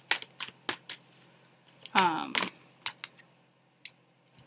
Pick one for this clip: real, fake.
real